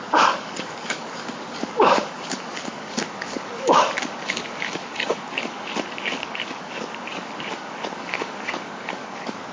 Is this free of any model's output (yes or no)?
no